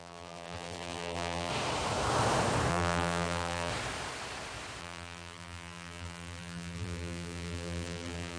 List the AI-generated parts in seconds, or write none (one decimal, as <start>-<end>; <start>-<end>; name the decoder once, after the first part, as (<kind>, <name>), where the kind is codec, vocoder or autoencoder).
0.0-1.5 (vocoder, BigVGAN v2); 2.7-3.7; 4.8-8.4